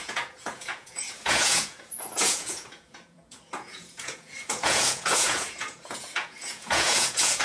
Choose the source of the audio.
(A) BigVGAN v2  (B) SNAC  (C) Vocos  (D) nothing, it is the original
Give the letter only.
C